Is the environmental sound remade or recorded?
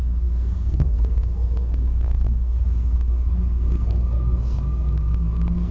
remade